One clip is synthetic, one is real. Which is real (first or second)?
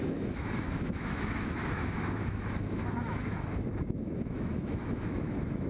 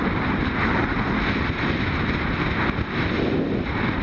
second